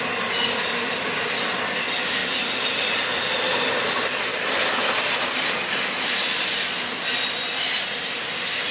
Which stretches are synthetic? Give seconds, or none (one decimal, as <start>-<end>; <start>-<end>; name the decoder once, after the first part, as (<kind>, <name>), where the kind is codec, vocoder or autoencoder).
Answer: none